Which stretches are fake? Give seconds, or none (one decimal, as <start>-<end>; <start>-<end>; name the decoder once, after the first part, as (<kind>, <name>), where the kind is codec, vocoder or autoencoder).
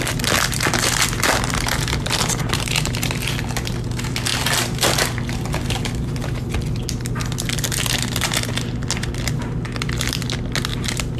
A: 2.4-2.9 (vocoder, BigVGAN v2); 10.7-11.2